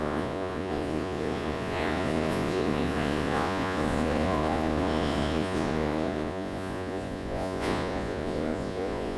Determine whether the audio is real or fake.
fake